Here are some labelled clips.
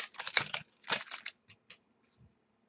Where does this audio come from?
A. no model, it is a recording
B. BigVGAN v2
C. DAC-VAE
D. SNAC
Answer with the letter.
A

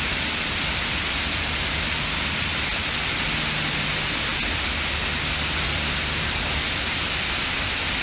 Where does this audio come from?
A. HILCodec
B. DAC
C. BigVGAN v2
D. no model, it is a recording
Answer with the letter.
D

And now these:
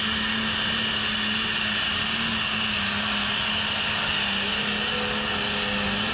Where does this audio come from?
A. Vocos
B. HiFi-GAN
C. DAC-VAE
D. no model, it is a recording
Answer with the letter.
D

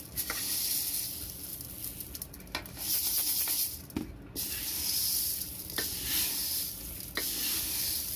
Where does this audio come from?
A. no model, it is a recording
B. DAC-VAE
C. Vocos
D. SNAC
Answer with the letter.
A